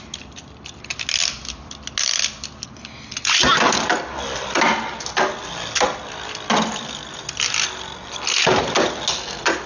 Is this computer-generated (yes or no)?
no